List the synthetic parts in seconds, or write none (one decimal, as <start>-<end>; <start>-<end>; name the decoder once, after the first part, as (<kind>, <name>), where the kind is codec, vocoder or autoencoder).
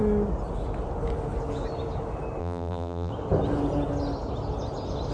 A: 2.4-3.1 (vocoder, BigVGAN v2)